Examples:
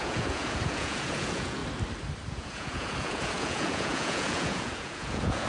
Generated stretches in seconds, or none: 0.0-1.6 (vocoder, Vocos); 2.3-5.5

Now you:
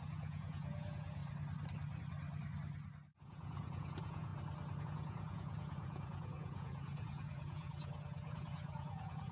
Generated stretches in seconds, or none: 0.0-1.2 (vocoder, Vocos); 3.2-4.3; 4.8-9.3

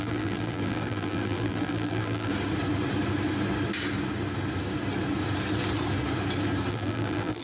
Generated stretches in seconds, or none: 0.0-2.3 (vocoder, BigVGAN v2); 6.7-7.4

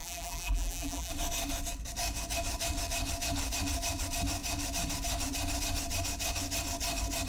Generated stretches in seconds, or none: 0.0-1.1 (vocoder, BigVGAN v2)

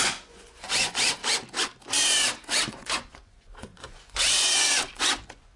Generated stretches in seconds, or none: 0.0-1.2 (vocoder, Vocos); 2.7-5.6

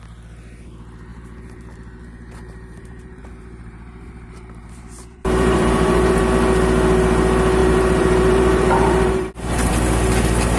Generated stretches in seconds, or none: 1.1-6.2 (vocoder, BigVGAN v2); 7.6-9.7